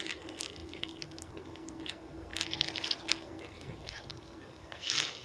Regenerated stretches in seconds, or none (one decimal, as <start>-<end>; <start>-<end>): 0.0-5.2